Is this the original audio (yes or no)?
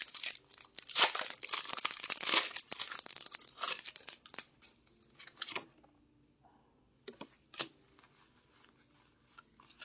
yes